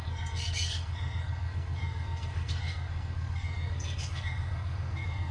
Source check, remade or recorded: remade